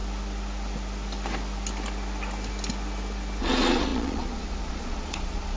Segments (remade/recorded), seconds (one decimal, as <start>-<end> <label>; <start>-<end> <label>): 0.0-3.4 recorded; 3.4-5.6 remade